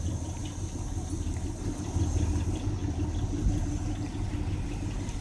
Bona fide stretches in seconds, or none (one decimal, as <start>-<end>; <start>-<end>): 0.0-5.2